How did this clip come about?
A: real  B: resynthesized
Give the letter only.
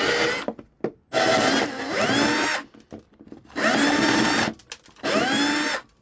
A